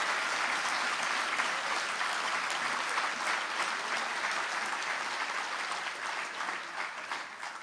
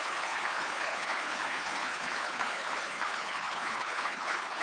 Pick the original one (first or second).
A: first